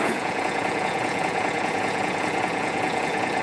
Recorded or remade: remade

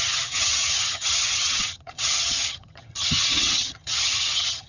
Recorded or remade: remade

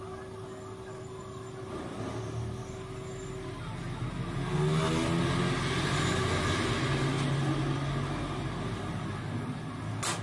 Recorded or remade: recorded